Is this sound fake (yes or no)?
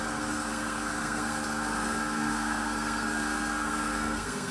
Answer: yes